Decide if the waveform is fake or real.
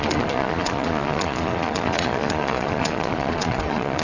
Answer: fake